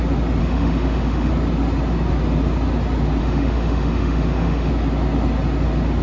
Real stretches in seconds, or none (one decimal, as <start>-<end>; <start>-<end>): 0.0-0.4; 1.3-3.2; 4.7-6.0